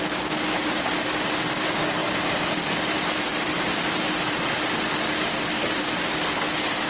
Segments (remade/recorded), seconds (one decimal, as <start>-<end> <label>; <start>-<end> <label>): 0.0-3.3 recorded; 3.3-4.5 remade; 4.5-6.9 recorded